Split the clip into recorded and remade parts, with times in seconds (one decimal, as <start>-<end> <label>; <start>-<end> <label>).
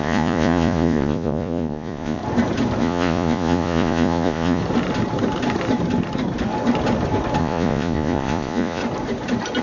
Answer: 0.0-2.2 remade; 2.2-2.8 recorded; 2.8-4.6 remade; 4.6-7.4 recorded; 7.4-8.8 remade; 8.8-9.6 recorded